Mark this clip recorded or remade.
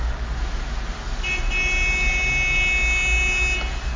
recorded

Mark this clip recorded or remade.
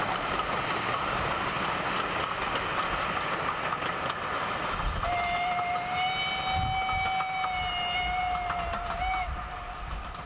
recorded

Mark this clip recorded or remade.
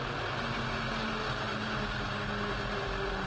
recorded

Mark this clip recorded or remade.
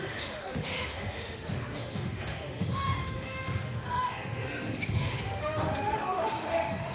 remade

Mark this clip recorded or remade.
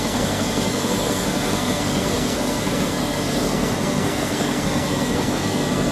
remade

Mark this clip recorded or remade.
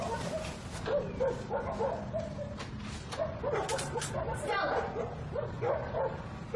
recorded